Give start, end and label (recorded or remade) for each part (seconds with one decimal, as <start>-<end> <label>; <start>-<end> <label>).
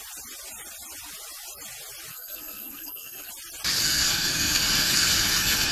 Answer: 0.0-2.1 recorded; 2.1-3.3 remade; 3.3-3.8 recorded; 3.8-5.7 remade